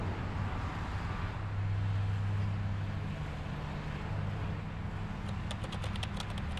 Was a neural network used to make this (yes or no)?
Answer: no